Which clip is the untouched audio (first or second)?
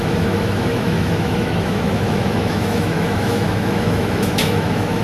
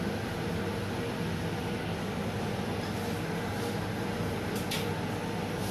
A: second